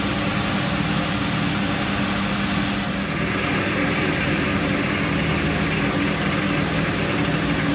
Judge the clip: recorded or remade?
recorded